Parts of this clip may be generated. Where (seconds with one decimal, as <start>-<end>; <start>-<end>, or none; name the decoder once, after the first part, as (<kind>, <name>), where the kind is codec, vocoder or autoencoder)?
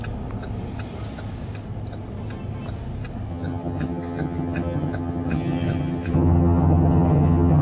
3.3-7.6 (vocoder, HiFi-GAN)